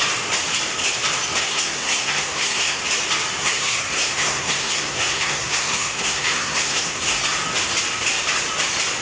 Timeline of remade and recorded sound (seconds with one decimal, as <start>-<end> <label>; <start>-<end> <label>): 0.0-1.4 recorded; 1.4-2.8 remade; 2.8-3.4 recorded; 3.4-7.2 remade; 7.2-9.0 recorded